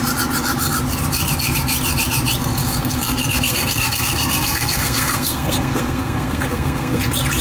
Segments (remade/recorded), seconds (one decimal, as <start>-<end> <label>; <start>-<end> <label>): 0.0-2.6 recorded; 2.6-7.0 remade; 7.0-7.4 recorded